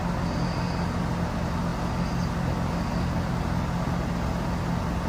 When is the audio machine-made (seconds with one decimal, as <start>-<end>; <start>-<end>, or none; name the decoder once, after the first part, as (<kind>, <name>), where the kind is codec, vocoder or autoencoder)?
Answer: none